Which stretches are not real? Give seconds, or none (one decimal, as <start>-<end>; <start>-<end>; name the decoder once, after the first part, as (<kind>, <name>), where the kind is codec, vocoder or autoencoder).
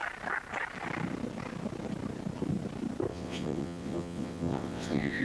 3.1-5.2 (vocoder, WaveNeXt)